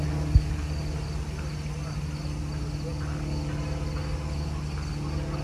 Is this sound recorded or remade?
recorded